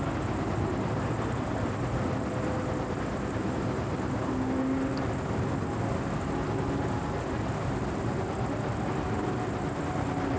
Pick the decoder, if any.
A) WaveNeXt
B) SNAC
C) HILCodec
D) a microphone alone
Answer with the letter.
D